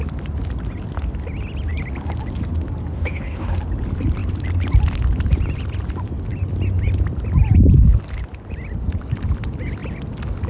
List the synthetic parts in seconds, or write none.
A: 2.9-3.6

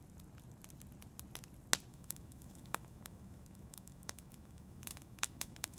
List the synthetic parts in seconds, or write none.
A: 1.9-5.8

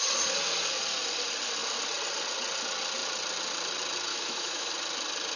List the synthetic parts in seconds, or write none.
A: 4.1-4.7

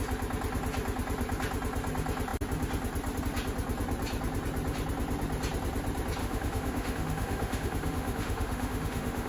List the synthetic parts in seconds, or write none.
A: 6.2-9.3

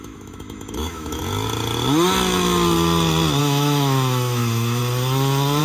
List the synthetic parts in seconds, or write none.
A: 0.0-1.2; 3.4-4.8

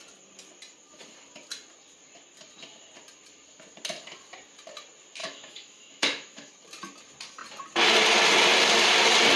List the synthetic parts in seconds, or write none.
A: 5.2-6.5

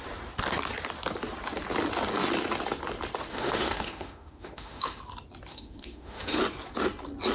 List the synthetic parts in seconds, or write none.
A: 3.3-5.0; 5.5-6.4